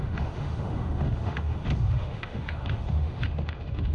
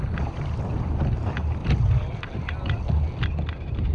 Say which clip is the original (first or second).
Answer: second